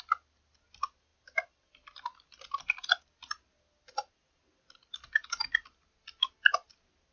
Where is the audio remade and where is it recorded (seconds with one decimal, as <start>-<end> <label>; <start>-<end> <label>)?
0.0-7.1 recorded